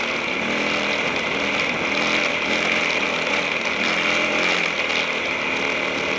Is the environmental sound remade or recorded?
recorded